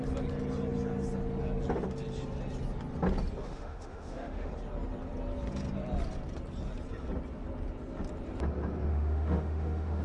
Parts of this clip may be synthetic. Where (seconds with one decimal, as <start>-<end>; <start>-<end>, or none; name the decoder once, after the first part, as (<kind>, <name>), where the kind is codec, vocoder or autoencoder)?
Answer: 3.4-4.5 (autoencoder, DAC-VAE); 8.9-10.0